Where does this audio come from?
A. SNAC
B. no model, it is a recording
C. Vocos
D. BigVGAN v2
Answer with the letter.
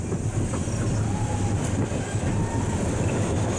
B